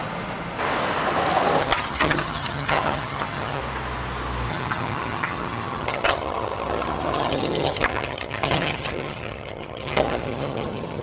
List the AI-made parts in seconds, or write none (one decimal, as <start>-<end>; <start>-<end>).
1.6-3.6; 4.5-11.0